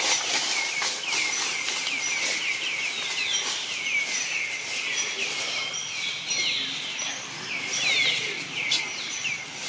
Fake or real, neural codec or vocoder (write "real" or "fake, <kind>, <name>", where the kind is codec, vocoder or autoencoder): real